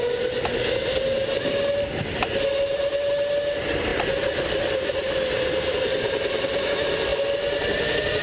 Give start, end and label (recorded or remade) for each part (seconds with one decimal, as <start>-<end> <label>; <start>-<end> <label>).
0.0-8.2 recorded